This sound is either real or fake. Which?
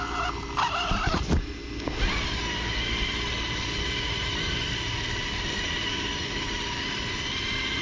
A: real